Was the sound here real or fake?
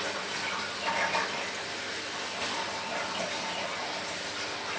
real